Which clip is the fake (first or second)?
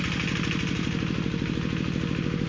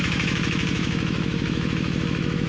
second